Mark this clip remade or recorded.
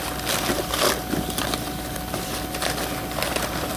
recorded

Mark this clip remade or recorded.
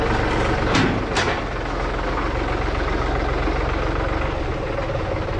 recorded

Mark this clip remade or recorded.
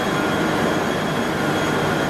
recorded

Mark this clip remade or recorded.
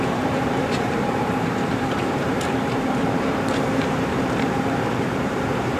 remade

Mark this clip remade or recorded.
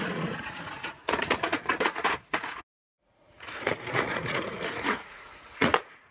remade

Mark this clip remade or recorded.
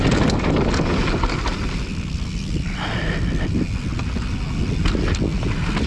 recorded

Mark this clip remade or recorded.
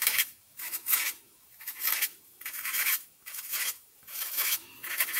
remade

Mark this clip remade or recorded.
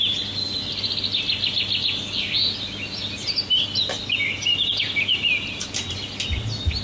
recorded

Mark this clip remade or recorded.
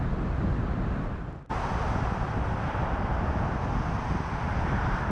recorded